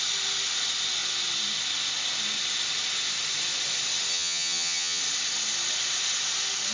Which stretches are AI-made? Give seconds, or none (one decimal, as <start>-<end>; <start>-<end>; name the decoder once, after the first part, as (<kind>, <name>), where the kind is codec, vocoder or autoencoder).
4.1-5.0 (vocoder, HiFi-GAN)